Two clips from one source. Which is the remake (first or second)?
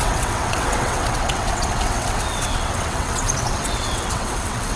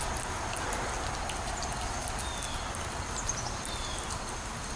first